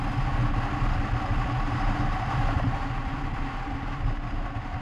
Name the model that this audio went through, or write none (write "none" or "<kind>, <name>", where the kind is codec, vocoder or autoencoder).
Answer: none